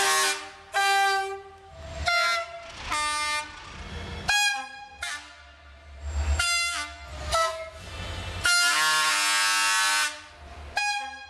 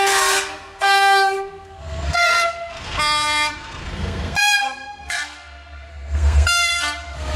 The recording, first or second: first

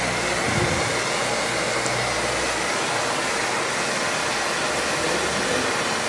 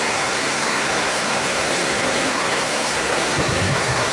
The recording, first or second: first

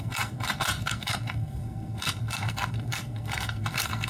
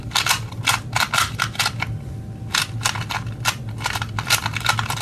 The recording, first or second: second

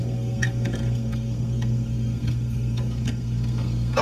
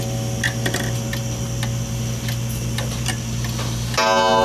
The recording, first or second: second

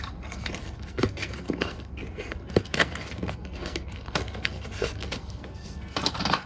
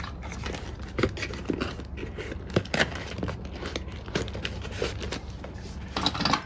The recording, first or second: second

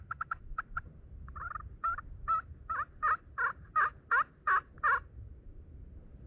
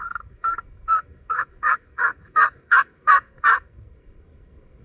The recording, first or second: first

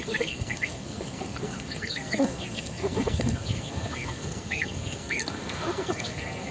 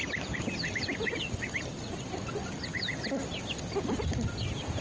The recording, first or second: second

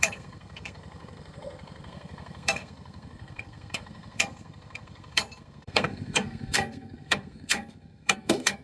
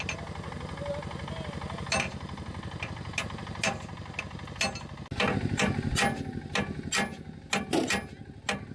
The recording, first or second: second